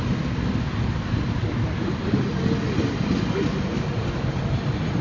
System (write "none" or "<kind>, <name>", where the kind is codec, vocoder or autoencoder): none